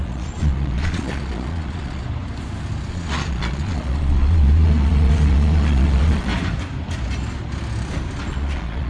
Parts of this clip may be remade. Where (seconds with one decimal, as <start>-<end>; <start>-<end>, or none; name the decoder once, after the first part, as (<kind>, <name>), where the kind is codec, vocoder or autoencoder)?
0.0-2.0 (vocoder, Vocos); 2.9-6.3; 8.3-8.9